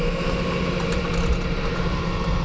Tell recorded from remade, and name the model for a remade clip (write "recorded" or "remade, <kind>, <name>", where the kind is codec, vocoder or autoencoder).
remade, vocoder, BigVGAN v2